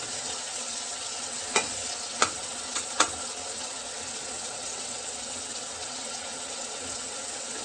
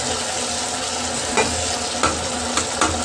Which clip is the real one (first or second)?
second